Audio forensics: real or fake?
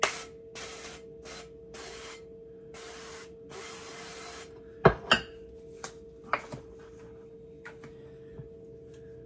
real